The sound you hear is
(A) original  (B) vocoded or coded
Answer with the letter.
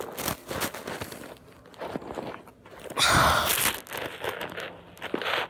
A